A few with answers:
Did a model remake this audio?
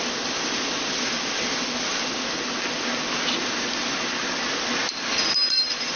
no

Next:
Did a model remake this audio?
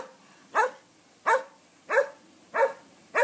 no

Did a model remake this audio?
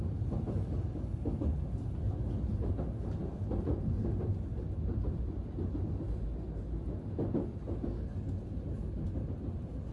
no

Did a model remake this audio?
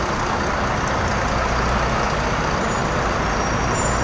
no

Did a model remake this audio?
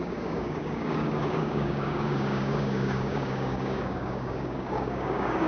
yes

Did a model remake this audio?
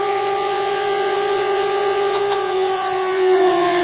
yes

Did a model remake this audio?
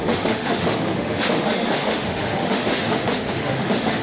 yes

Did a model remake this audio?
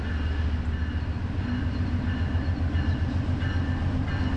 no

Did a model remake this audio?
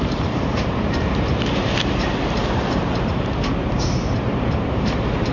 yes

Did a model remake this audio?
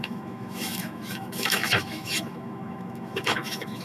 yes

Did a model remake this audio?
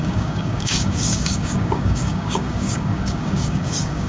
yes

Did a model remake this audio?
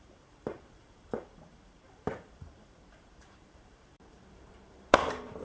yes